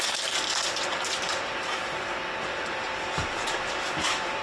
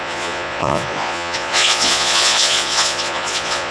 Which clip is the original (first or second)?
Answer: first